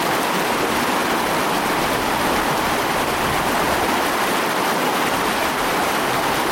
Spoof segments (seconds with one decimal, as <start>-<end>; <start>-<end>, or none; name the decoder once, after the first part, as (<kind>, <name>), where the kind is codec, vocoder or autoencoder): 5.4-6.0 (vocoder, BigVGAN v2)